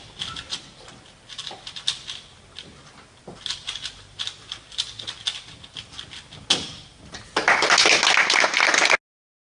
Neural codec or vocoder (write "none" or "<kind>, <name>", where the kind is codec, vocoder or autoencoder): none